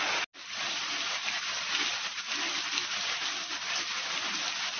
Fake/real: real